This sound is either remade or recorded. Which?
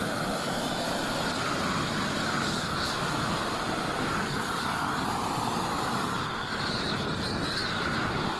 recorded